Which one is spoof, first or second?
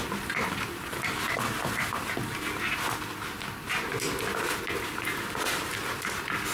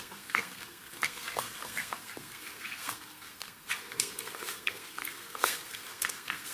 second